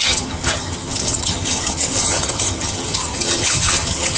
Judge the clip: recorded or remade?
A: remade